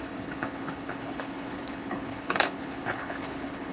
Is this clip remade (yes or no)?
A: yes